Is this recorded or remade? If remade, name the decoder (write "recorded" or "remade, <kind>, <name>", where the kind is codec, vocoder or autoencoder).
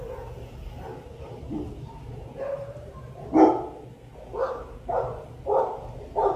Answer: recorded